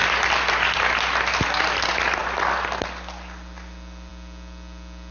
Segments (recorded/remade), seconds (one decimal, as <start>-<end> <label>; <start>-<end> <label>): 0.0-5.1 recorded